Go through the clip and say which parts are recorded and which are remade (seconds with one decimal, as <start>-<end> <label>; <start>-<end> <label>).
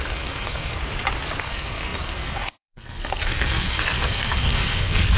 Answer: 0.0-0.8 remade; 0.8-1.4 recorded; 1.4-5.2 remade